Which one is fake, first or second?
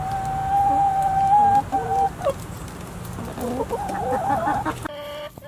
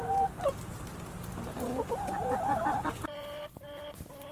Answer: second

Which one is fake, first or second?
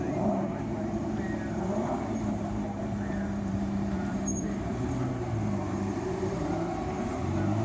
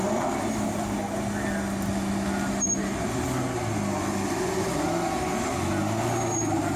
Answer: first